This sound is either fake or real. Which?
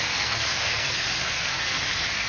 fake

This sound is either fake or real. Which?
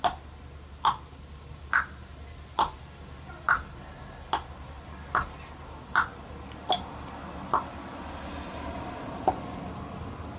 real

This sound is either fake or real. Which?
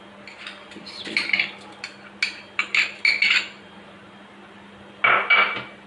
real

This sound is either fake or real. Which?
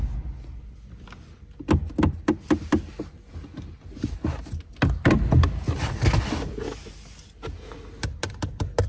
real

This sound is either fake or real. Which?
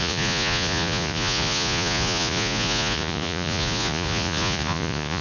fake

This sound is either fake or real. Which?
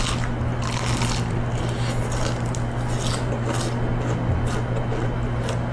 real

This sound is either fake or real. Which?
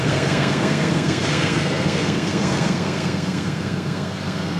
fake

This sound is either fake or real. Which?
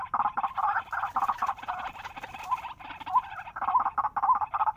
fake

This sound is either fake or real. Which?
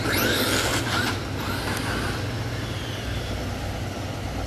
real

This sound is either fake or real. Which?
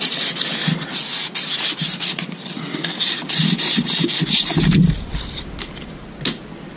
real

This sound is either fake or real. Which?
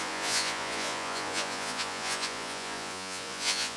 fake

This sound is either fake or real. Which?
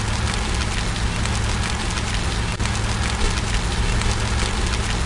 real